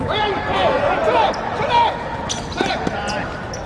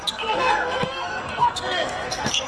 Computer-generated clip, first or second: second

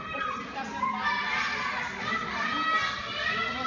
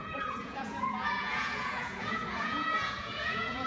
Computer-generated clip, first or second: second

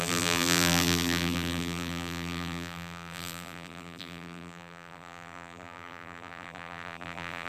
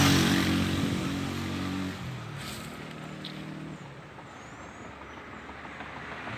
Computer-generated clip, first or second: first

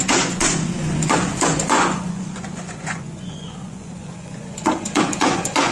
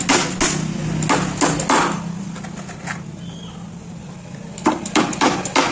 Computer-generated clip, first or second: first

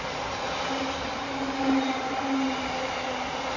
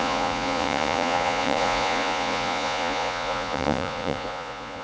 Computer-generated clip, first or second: second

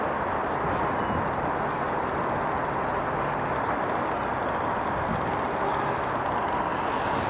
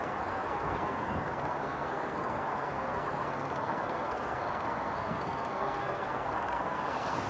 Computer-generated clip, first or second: second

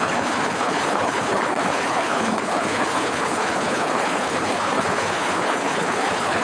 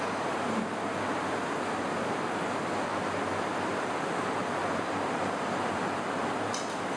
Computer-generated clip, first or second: first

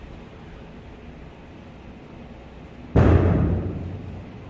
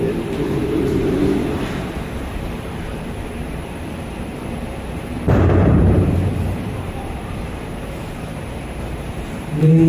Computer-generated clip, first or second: second